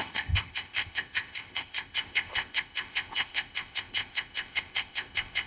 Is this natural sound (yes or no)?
no